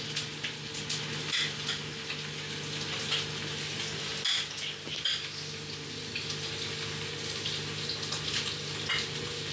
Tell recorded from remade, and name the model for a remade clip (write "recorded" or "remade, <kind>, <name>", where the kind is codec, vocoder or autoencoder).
recorded